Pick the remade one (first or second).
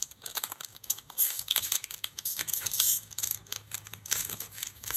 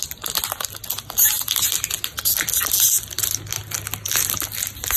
first